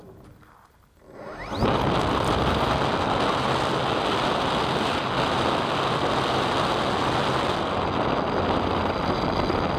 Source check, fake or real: real